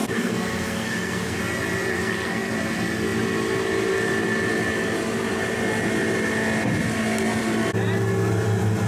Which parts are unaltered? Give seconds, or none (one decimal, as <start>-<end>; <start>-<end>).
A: 1.4-1.9; 2.5-8.9